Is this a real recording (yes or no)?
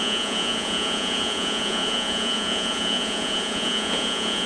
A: no